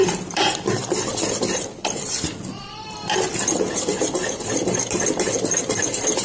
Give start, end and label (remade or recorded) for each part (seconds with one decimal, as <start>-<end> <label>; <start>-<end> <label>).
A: 0.0-6.2 remade